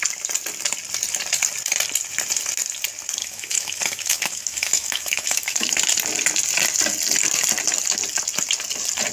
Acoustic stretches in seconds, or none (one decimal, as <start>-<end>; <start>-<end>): 0.0-3.2; 5.7-9.1